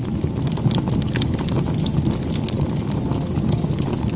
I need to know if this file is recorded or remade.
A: recorded